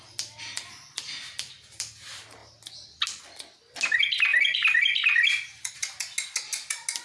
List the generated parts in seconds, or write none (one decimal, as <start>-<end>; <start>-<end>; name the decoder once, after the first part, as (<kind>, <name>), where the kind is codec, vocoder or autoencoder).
none